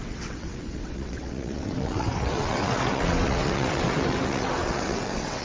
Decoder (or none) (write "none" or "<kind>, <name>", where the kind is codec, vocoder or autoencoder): vocoder, WaveNeXt